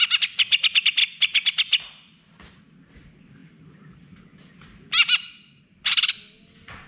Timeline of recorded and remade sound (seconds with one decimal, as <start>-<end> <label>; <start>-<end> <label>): 0.0-3.4 recorded; 3.4-5.6 remade; 5.6-6.9 recorded